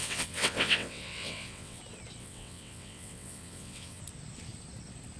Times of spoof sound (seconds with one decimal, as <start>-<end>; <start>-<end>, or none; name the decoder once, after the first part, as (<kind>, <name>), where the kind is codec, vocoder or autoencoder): 0.0-1.8 (vocoder, WaveNeXt); 2.2-4.0